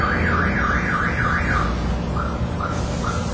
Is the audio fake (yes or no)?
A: no